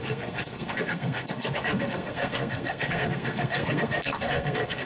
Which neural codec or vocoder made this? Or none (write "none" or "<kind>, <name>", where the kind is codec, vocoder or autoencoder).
codec, SNAC